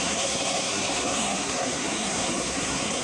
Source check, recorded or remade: remade